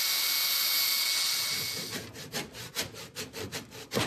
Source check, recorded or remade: recorded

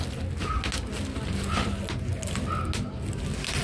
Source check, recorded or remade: recorded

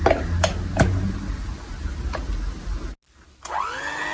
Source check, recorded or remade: recorded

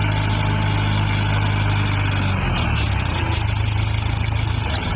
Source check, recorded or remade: recorded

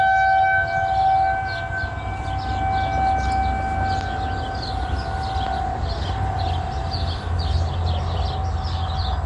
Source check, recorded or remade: recorded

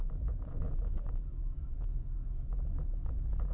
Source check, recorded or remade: remade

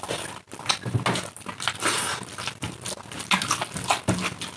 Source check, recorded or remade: recorded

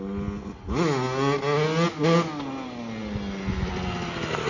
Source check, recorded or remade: recorded